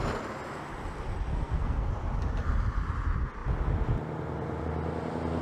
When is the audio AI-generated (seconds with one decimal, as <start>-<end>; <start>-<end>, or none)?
1.3-1.9